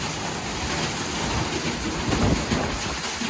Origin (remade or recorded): recorded